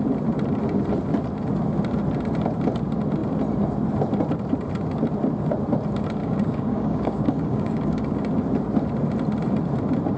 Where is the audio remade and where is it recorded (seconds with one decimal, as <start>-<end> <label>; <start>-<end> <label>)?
0.0-6.2 recorded; 6.2-8.0 remade; 8.0-10.2 recorded